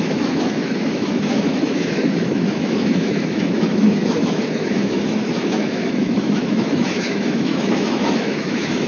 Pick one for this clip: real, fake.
fake